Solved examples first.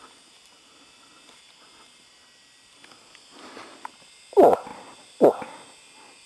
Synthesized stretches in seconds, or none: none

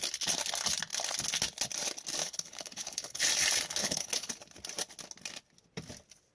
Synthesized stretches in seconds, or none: 2.2-3.2 (codec, HILCodec); 3.8-4.3

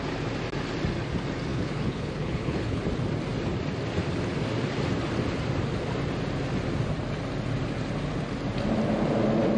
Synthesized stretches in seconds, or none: 1.5-2.8 (codec, HILCodec)

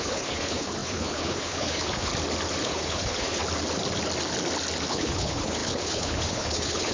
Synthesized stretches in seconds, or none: 0.0-2.1 (codec, HILCodec); 2.6-3.4; 4.9-6.9

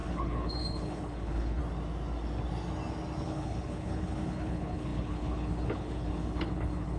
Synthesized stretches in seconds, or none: 0.0-1.6 (codec, HILCodec); 3.2-7.0

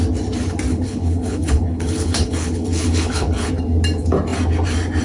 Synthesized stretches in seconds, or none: 0.7-3.5 (codec, HILCodec)

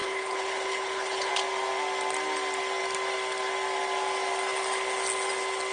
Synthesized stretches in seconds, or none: 0.0-1.3 (codec, HILCodec)

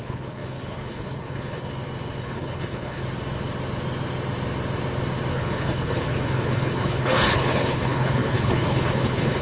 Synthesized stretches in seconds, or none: 0.0-1.7 (codec, HILCodec); 2.2-3.0; 5.3-9.4